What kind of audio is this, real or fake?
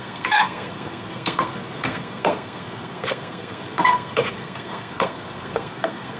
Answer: fake